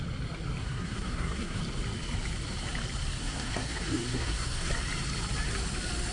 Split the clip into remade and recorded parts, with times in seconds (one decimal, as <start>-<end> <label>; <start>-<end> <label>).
0.0-0.6 recorded; 0.6-1.6 remade; 1.6-3.2 recorded; 3.2-4.7 remade; 4.7-6.1 recorded